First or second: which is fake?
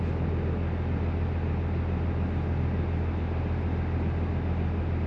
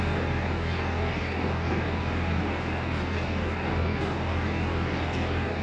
second